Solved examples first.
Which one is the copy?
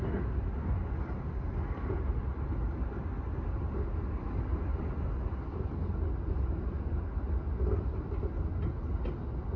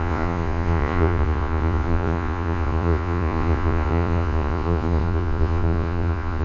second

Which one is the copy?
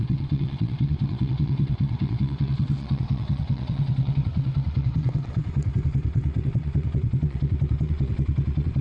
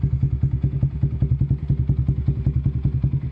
first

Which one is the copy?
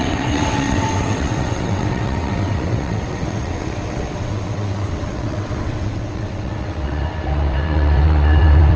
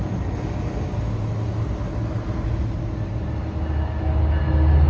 first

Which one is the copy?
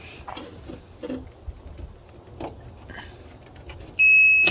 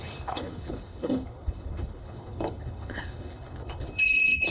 second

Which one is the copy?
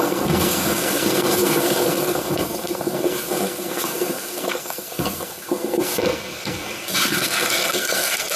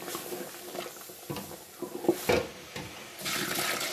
first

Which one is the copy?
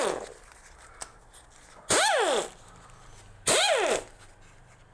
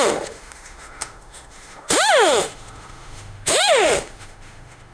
second